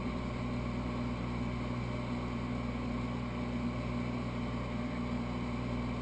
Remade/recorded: recorded